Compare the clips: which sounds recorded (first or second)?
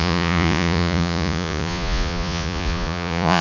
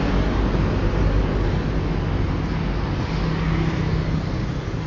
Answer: second